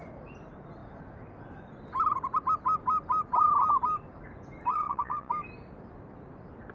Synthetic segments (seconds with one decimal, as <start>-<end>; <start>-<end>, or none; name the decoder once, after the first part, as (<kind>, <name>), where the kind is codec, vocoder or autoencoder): 4.7-5.3 (vocoder, WaveNeXt)